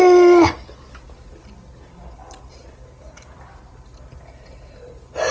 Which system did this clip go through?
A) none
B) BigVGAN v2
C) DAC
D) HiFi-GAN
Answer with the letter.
A